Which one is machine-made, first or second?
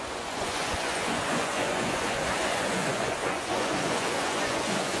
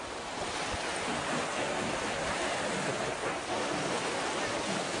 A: first